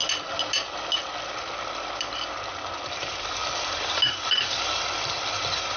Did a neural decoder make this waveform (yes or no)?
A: no